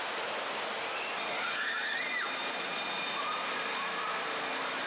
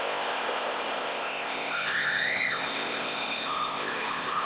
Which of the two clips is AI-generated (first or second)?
second